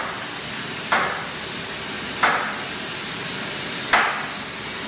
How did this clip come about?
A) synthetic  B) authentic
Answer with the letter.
B